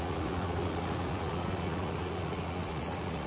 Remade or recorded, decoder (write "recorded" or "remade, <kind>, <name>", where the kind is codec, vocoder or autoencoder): remade, vocoder, Vocos